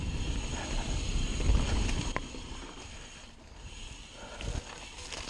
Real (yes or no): yes